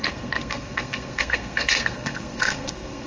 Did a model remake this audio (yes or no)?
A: yes